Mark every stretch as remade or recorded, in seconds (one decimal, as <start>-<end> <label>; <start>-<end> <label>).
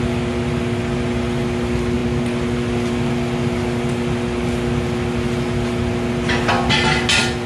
0.0-7.5 recorded